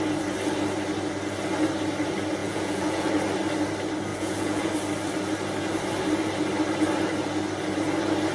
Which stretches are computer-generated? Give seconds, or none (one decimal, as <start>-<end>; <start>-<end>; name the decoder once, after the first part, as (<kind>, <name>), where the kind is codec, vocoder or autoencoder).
2.4-3.1 (vocoder, Vocos); 4.1-4.6